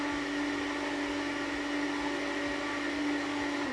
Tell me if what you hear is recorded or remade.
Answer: recorded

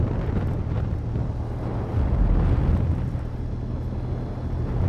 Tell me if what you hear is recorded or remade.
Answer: recorded